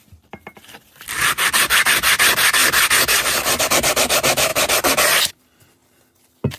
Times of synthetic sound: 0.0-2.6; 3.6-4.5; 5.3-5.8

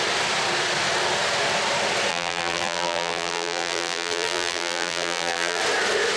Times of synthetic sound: 2.1-5.6

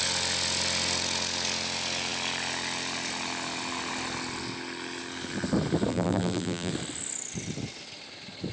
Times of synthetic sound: 5.9-6.7

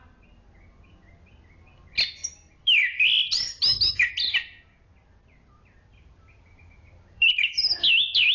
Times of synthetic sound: 2.2-3.9; 5.9-7.4

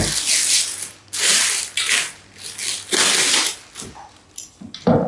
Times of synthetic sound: none

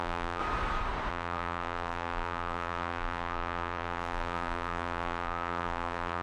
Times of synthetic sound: 0.0-0.4; 1.1-6.2